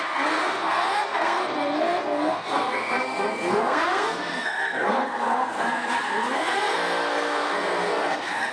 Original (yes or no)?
no